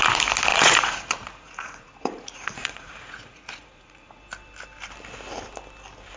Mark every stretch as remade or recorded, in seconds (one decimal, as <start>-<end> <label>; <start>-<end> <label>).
0.0-0.5 recorded; 0.5-4.2 remade; 4.2-6.2 recorded